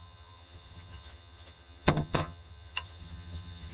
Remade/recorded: remade